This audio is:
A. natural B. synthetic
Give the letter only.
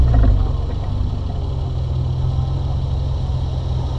A